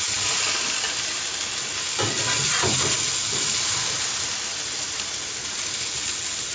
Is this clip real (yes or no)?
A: yes